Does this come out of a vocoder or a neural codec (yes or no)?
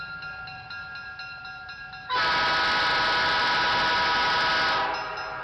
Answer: no